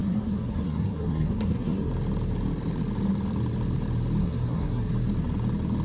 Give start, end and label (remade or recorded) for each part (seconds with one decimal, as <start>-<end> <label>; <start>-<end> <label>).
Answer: 0.0-1.9 remade; 1.9-4.2 recorded; 4.2-4.9 remade; 4.9-5.8 recorded